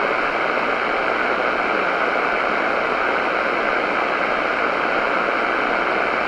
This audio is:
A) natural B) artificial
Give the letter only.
A